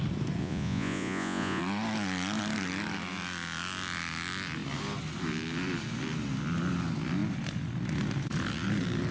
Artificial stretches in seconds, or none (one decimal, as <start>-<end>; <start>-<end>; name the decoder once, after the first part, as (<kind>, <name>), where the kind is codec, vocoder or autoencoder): 0.4-1.6 (vocoder, Vocos)